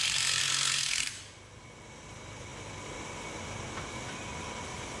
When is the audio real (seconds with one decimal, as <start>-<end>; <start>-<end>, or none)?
0.0-0.4; 1.1-5.0